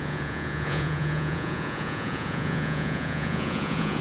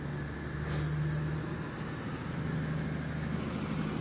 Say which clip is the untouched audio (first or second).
second